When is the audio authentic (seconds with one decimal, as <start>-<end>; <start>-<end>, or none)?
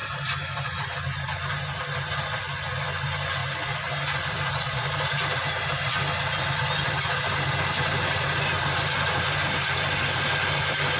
0.0-11.0